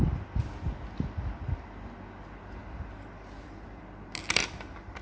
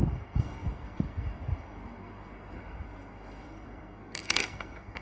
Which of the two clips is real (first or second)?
first